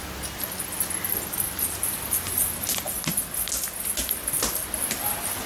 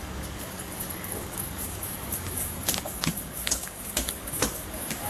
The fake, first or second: second